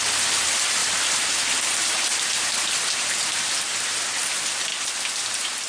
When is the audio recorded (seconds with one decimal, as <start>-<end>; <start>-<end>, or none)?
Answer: 0.0-0.8; 3.5-5.7